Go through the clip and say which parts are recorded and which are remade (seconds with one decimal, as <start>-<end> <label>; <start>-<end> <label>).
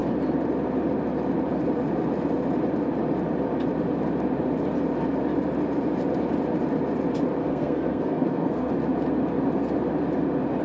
0.0-7.4 recorded; 7.4-8.7 remade; 8.7-10.6 recorded